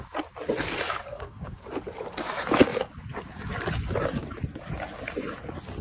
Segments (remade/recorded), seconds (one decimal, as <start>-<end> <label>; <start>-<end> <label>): 0.0-1.1 recorded; 1.1-1.6 remade; 1.6-5.8 recorded